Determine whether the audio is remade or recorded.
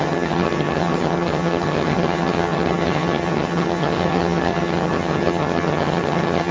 remade